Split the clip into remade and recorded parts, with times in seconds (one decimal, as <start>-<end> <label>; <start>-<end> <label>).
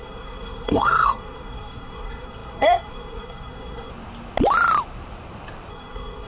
0.0-3.9 remade; 3.9-5.7 recorded; 5.7-6.3 remade